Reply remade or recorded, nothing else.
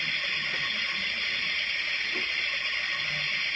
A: recorded